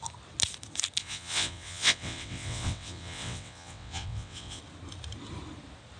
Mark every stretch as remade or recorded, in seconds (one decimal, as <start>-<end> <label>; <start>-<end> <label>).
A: 0.0-1.0 recorded; 1.0-4.6 remade; 4.6-6.0 recorded